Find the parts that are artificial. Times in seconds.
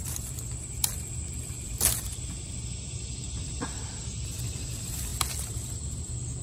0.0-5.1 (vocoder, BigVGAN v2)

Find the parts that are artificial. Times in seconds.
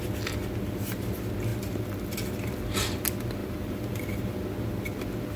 1.5-2.1 (vocoder, BigVGAN v2); 3.4-4.2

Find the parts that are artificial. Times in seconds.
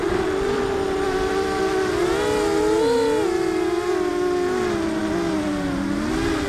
0.0-1.6 (vocoder, BigVGAN v2)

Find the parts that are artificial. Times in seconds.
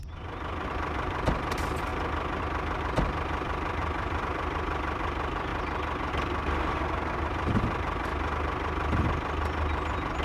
0.0-1.9 (vocoder, BigVGAN v2); 2.8-5.5; 6.1-8.1; 9.0-10.2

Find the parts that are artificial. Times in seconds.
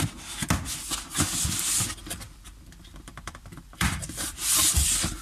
2.0-5.2 (vocoder, BigVGAN v2)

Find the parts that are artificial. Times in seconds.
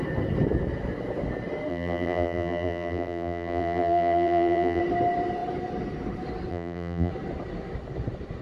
1.7-4.8 (vocoder, BigVGAN v2); 6.5-7.1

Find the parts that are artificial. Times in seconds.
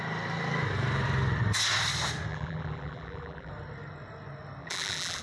2.3-3.5 (vocoder, BigVGAN v2); 4.6-5.2